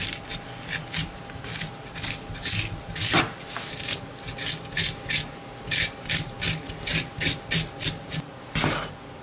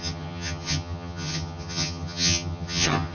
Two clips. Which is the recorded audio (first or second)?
first